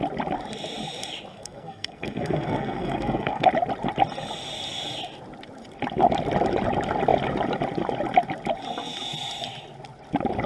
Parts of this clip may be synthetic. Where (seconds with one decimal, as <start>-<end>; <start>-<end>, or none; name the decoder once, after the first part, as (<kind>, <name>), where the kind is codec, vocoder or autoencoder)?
1.3-3.5 (codec, SNAC)